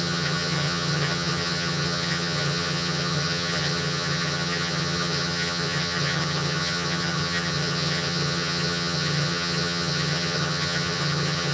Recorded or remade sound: remade